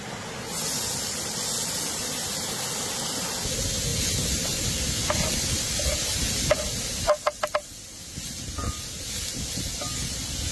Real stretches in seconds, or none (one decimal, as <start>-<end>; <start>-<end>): 0.0-3.9; 4.9-10.5